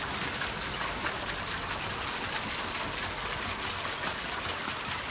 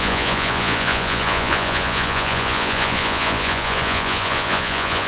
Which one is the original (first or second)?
first